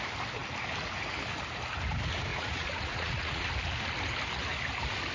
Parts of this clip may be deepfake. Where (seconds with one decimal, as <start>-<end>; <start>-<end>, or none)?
2.3-3.5